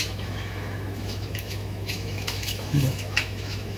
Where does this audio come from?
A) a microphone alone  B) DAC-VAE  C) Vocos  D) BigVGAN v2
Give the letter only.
B